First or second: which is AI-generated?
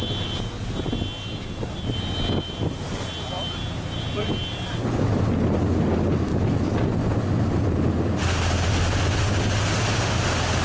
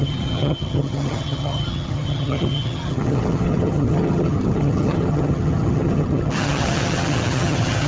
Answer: second